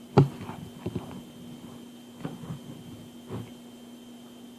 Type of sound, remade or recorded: recorded